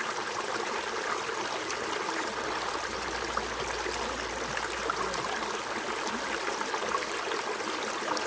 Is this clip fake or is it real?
real